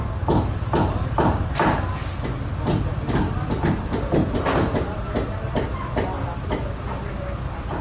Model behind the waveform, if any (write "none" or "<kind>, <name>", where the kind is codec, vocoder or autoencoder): none